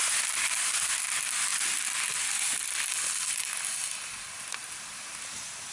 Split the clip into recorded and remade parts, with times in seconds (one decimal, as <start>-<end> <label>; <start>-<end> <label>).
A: 0.0-1.0 remade; 1.0-5.7 recorded